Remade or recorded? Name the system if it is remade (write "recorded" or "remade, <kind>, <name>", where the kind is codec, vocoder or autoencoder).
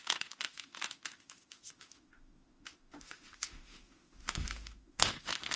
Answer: remade, autoencoder, DAC-VAE